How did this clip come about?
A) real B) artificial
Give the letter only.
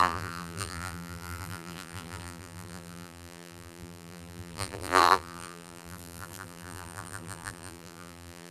B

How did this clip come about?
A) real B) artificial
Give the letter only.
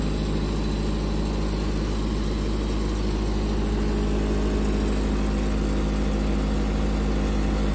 A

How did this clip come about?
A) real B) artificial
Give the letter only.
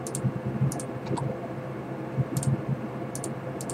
A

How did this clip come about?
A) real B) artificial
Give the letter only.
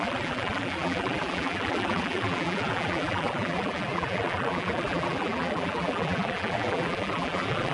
B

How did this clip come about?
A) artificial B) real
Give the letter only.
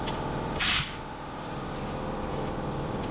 A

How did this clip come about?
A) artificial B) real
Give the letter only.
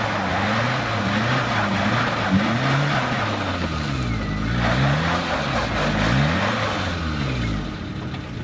B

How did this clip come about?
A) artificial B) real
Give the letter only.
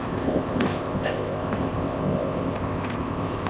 A